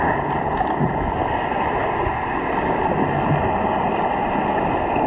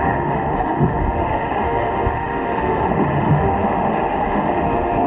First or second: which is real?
first